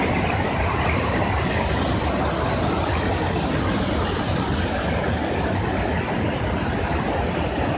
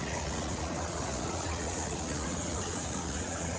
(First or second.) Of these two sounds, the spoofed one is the second